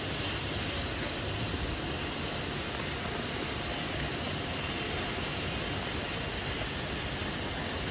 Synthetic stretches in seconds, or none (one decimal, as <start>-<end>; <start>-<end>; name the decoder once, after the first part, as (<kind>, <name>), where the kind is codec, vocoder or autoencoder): none